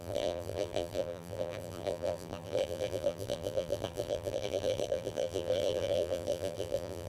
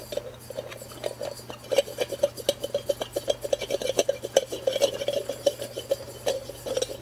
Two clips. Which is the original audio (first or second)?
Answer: second